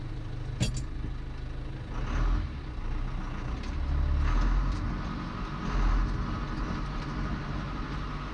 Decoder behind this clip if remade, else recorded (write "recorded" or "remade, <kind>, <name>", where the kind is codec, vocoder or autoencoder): recorded